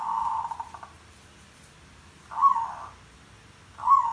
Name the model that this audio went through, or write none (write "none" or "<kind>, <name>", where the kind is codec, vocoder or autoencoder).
none